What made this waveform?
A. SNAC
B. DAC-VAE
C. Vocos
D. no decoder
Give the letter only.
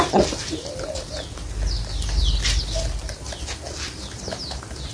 D